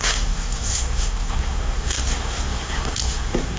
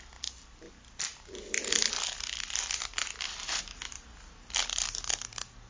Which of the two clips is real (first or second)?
second